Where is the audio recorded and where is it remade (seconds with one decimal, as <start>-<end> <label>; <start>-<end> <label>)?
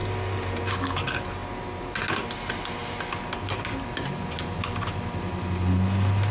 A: 0.0-6.3 recorded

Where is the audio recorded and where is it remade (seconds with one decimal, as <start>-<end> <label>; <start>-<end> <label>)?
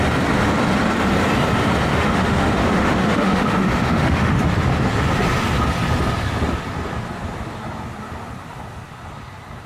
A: 0.0-1.9 recorded; 1.9-4.4 remade; 4.4-9.7 recorded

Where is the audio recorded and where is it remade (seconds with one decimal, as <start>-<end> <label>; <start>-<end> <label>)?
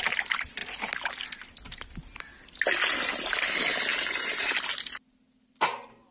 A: 0.0-3.9 recorded; 3.9-4.5 remade; 4.5-6.1 recorded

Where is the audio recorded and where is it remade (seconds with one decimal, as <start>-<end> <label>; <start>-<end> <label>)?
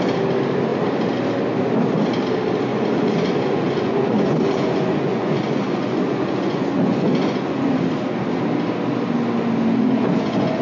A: 0.0-2.7 recorded; 2.7-7.7 remade; 7.7-9.8 recorded; 9.8-10.6 remade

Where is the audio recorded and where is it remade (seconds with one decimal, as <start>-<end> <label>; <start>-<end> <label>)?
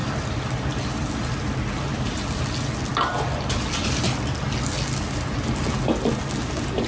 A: 0.0-6.9 recorded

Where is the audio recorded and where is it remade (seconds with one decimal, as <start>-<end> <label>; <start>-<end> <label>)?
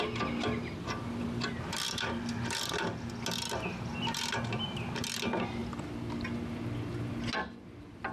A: 0.0-8.1 recorded